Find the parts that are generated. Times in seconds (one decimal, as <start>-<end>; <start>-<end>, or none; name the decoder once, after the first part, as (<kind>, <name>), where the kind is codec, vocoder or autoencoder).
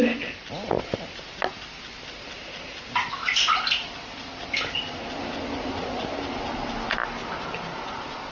7.0-8.3 (vocoder, BigVGAN v2)